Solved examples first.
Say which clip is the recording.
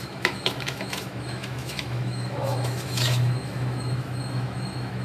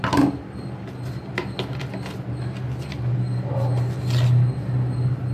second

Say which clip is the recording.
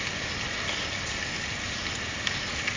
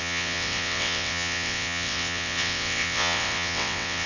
first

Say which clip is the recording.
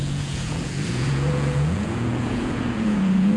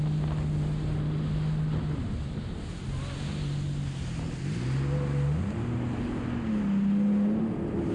second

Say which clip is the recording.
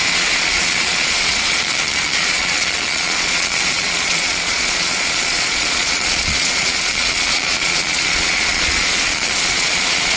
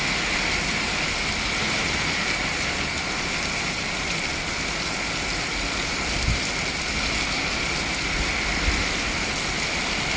second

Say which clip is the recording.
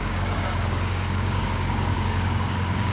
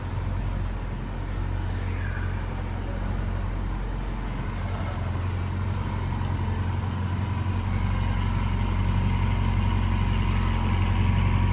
second